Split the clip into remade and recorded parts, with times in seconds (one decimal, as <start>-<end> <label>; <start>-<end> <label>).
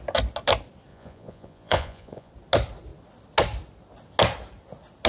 0.0-0.9 recorded; 0.9-2.3 remade; 2.3-5.1 recorded